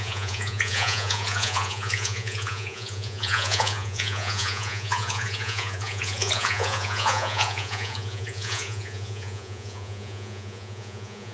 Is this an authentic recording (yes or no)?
no